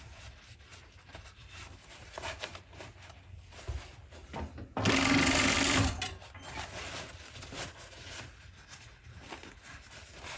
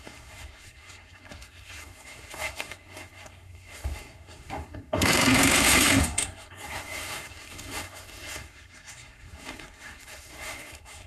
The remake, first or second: second